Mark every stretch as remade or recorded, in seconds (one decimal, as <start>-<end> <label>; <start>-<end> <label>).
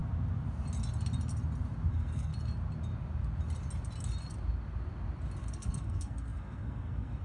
0.0-1.9 recorded; 1.9-2.3 remade; 2.3-5.4 recorded; 5.4-7.2 remade